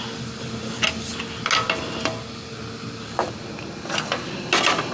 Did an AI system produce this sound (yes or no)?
no